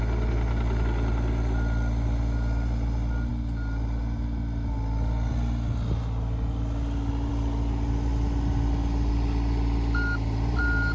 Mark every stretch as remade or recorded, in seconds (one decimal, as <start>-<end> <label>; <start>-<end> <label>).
0.0-10.9 recorded